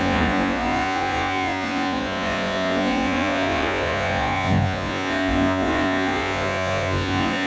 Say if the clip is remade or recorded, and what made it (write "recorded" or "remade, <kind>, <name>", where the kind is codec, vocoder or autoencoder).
remade, vocoder, Vocos